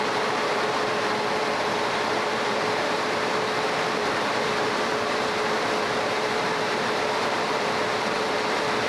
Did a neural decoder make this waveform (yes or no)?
yes